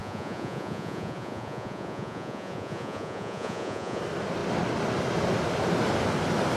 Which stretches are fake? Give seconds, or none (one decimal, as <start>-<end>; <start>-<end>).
0.0-4.0